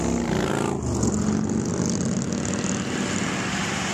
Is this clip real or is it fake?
real